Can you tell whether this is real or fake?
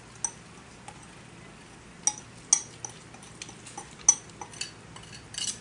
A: real